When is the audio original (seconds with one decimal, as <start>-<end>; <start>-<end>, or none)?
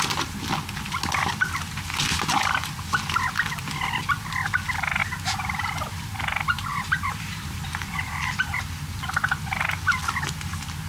0.0-5.0; 5.7-6.7; 8.6-10.9